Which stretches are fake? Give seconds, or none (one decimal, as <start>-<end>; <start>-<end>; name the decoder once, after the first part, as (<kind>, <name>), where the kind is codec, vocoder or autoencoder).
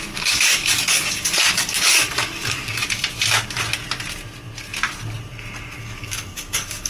0.0-2.8 (codec, DAC); 5.8-6.9